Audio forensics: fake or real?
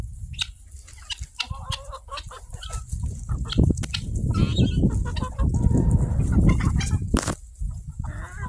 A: real